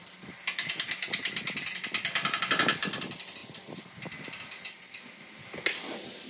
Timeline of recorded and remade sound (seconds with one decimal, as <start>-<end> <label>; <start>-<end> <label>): 0.0-6.3 recorded